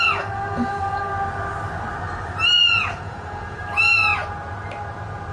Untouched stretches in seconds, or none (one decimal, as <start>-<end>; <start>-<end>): 1.1-2.5; 4.1-5.3